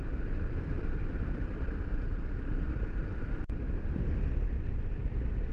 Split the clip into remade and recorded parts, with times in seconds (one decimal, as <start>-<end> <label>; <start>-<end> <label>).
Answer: 0.0-3.1 recorded; 3.1-3.6 remade; 3.6-5.5 recorded